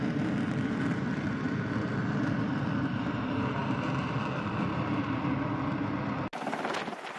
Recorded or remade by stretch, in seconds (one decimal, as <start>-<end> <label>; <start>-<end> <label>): 0.0-3.6 remade; 3.6-6.8 recorded; 6.8-7.2 remade